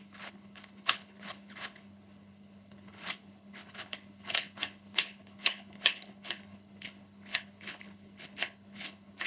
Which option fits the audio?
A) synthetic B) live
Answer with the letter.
A